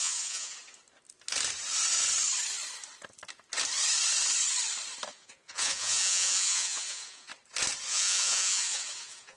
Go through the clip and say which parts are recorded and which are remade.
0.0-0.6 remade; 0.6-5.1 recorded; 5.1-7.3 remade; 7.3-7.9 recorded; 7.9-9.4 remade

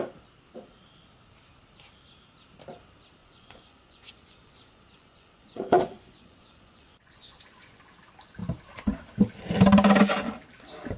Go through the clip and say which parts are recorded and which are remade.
0.0-3.2 recorded; 3.2-7.8 remade; 7.8-11.0 recorded

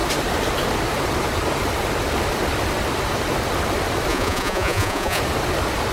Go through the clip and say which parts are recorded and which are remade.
0.0-4.1 recorded; 4.1-5.2 remade; 5.2-5.9 recorded

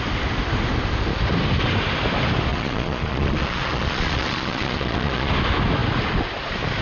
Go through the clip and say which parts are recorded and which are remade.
0.0-2.5 recorded; 2.5-5.3 remade; 5.3-6.8 recorded